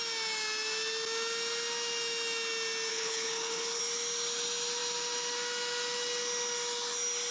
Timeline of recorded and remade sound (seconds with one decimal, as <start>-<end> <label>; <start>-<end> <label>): 0.0-2.9 recorded; 2.9-3.8 remade; 3.8-7.3 recorded